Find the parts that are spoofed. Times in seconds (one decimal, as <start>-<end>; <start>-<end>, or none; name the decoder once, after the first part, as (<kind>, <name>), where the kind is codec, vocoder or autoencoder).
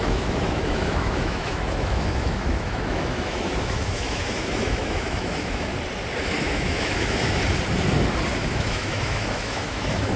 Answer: 0.0-5.7 (autoencoder, DAC-VAE); 6.4-7.4; 8.4-10.2